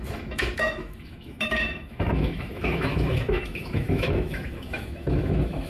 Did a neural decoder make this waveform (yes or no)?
yes